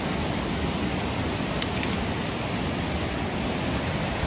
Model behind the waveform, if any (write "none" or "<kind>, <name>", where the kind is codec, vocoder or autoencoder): none